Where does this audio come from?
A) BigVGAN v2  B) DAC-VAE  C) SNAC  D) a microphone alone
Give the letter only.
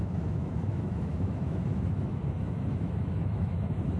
B